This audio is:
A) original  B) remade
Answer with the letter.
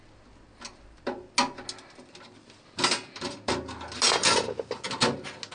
A